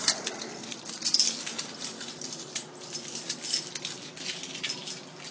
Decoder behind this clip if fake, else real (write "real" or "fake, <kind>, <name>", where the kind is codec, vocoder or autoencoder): real